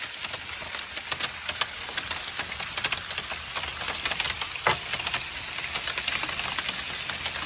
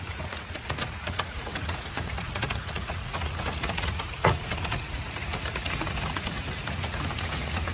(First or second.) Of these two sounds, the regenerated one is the second